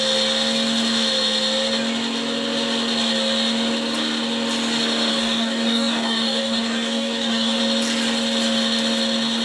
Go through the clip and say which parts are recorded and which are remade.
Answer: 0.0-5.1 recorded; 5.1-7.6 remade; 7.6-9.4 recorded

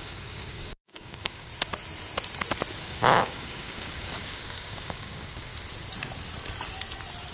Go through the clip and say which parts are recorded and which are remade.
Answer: 0.0-1.5 remade; 1.5-2.8 recorded; 2.8-5.5 remade; 5.5-7.3 recorded

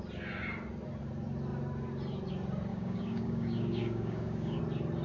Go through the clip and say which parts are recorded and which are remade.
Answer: 0.0-2.7 recorded; 2.7-4.6 remade; 4.6-5.0 recorded